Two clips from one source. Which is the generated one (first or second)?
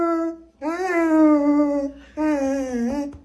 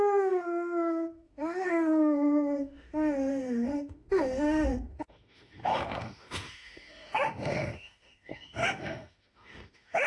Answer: second